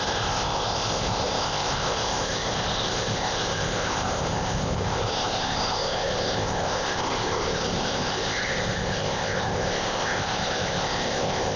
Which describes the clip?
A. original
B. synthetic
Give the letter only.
B